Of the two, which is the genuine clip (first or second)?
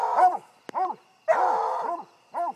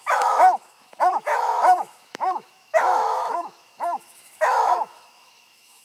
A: first